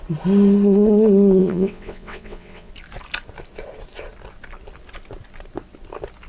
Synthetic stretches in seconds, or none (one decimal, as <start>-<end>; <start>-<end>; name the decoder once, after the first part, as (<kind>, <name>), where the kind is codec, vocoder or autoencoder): 1.4-2.7 (vocoder, WaveNeXt)